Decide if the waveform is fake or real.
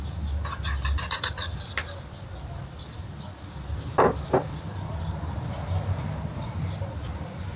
real